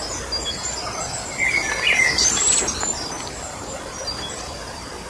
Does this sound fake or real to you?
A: real